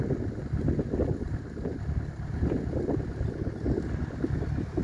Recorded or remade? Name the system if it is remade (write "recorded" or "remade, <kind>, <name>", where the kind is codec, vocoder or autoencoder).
recorded